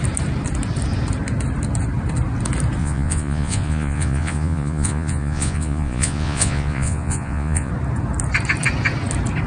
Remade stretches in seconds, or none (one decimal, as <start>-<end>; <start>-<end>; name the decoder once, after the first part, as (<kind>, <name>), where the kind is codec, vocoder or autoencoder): 2.8-7.7 (vocoder, Vocos)